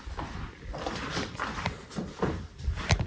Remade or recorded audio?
remade